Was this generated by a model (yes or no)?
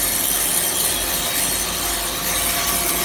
no